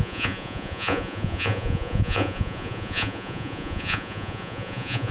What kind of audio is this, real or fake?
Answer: fake